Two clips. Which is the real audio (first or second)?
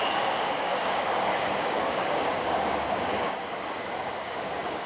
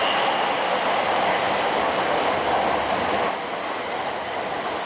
second